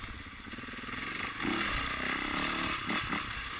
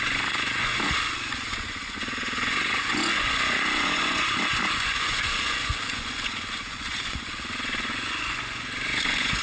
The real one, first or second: first